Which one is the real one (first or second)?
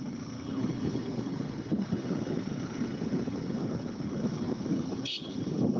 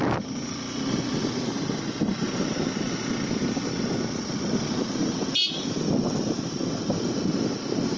second